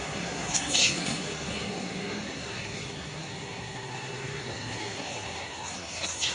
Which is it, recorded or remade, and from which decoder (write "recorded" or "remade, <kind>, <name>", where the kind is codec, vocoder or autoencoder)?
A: remade, codec, SNAC